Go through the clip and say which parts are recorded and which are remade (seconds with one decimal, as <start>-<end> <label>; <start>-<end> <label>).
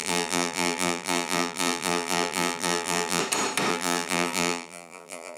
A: 0.0-3.2 remade; 3.2-3.7 recorded; 3.7-5.4 remade